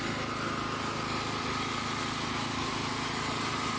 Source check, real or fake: real